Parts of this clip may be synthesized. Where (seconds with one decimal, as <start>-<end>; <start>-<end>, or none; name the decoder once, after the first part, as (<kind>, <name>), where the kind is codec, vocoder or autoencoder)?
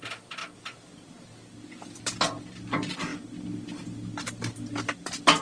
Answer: none